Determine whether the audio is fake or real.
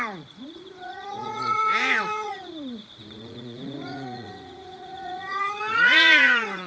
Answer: fake